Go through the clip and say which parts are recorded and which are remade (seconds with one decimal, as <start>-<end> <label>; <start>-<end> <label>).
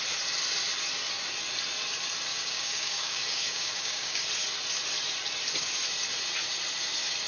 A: 0.0-2.3 recorded; 2.3-4.3 remade; 4.3-7.3 recorded